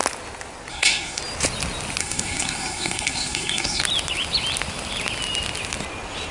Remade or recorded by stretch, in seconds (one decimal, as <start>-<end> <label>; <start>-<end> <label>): 0.0-0.7 recorded; 0.7-1.2 remade; 1.2-2.0 recorded; 2.0-3.8 remade; 3.8-6.3 recorded